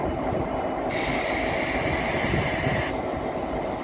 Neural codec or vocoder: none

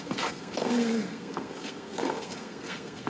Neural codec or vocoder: codec, SNAC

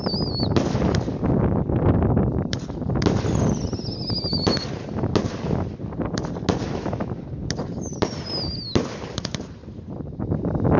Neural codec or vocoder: none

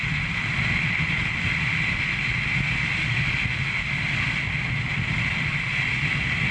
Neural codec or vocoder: none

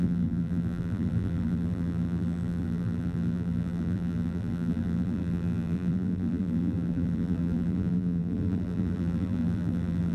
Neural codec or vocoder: vocoder, BigVGAN v2